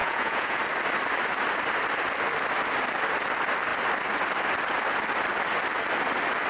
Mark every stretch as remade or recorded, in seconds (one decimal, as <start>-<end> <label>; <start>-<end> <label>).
0.0-0.6 remade; 0.6-6.5 recorded